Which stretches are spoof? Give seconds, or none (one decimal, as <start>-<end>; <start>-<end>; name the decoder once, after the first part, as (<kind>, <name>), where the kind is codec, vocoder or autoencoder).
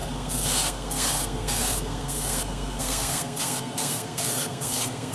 0.0-5.1 (codec, SNAC)